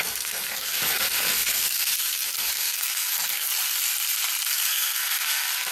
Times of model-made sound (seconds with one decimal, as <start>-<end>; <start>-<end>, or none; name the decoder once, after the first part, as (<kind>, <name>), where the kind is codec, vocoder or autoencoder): 0.0-3.5 (codec, SNAC); 4.5-5.7